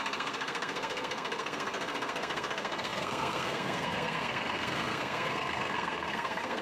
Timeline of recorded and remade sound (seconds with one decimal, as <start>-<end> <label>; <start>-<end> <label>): 0.0-6.6 remade